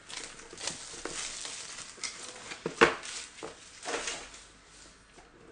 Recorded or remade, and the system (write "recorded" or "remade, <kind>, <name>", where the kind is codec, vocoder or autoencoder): recorded